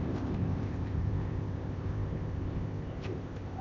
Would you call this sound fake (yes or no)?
yes